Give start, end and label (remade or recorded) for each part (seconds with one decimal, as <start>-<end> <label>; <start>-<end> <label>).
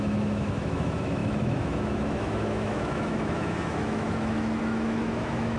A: 0.0-5.6 remade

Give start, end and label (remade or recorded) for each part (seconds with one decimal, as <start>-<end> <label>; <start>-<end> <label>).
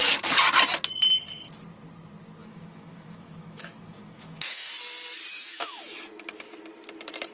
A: 0.0-2.4 recorded; 2.4-4.7 remade; 4.7-5.3 recorded; 5.3-5.8 remade; 5.8-7.3 recorded